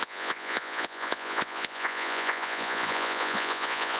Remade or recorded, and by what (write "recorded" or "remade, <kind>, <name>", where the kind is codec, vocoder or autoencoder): remade, vocoder, Vocos